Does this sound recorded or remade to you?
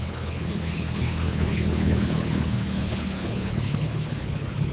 remade